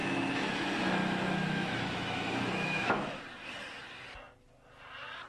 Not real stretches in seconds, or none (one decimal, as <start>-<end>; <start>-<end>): 0.0-3.2